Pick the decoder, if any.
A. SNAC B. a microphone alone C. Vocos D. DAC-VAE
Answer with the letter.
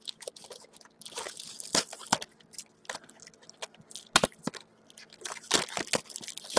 B